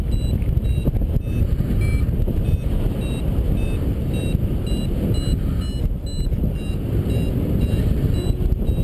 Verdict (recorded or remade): recorded